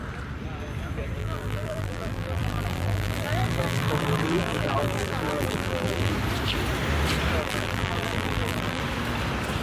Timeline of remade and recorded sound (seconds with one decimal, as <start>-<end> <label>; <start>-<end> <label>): 0.0-1.2 recorded; 1.2-6.1 remade; 6.1-7.4 recorded; 7.4-8.8 remade; 8.8-9.6 recorded